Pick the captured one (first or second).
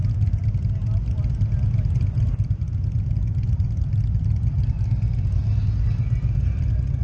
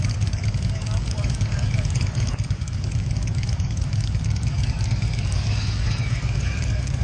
first